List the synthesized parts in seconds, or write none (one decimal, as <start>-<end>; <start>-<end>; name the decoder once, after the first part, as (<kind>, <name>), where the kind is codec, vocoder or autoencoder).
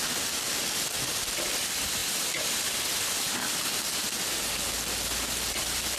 2.0-3.8 (vocoder, BigVGAN v2)